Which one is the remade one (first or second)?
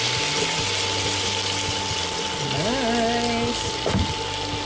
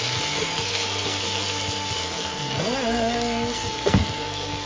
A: second